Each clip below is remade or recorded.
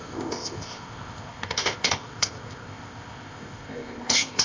remade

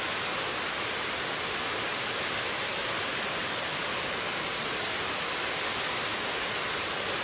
recorded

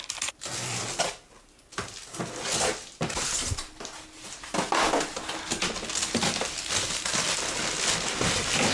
recorded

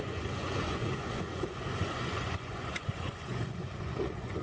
remade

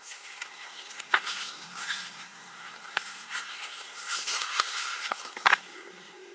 remade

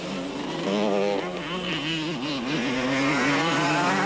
recorded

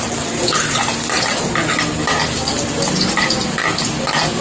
recorded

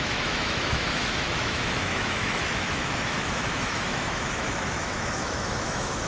remade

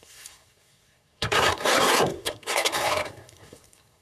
remade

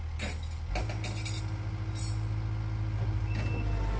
recorded